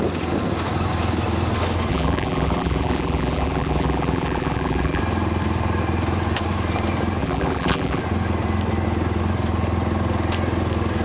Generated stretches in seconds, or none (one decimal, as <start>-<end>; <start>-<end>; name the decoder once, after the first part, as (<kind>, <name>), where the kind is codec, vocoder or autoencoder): 1.9-5.0 (vocoder, BigVGAN v2); 7.2-8.0